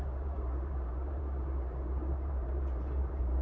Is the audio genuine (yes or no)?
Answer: no